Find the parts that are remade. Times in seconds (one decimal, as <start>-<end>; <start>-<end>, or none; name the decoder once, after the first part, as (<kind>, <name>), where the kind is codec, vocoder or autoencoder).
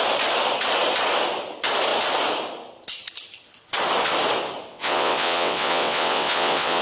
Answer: 4.7-6.8 (vocoder, WaveNeXt)